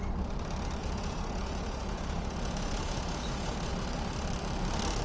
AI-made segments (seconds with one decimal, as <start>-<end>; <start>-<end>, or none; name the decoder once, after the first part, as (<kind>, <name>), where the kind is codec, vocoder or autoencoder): 0.8-3.7 (vocoder, Vocos)